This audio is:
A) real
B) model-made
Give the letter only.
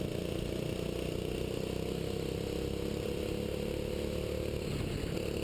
A